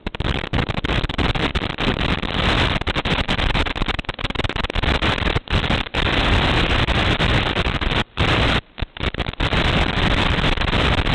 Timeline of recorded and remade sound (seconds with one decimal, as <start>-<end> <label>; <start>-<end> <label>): 0.0-11.1 remade